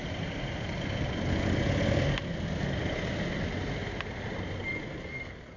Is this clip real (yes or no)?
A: yes